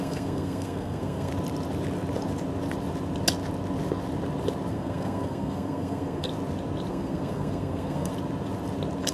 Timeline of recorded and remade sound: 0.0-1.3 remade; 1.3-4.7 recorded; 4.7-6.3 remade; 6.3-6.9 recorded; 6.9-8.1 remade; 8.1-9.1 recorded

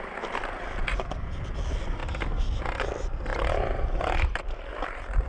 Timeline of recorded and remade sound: 0.0-5.3 recorded

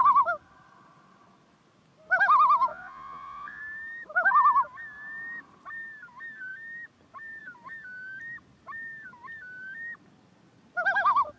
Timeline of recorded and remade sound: 0.0-2.7 recorded; 2.7-3.6 remade; 3.6-11.4 recorded

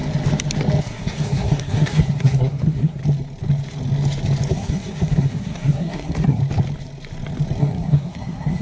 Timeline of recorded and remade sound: 0.0-0.8 recorded; 0.8-3.0 remade; 3.0-4.5 recorded; 4.5-6.4 remade; 6.4-7.6 recorded; 7.6-8.6 remade

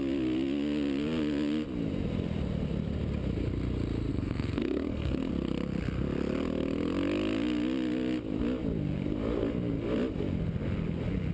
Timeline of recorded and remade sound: 0.0-4.1 recorded; 4.1-5.3 remade; 5.3-11.3 recorded

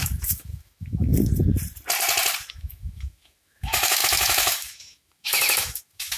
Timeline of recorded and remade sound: 0.0-1.1 remade; 1.1-2.5 recorded; 2.5-6.2 remade

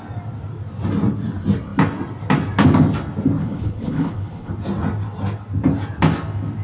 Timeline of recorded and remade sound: 0.0-3.4 recorded; 3.4-4.5 remade; 4.5-6.6 recorded

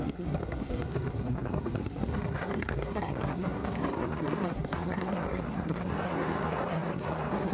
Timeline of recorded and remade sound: 0.0-7.5 remade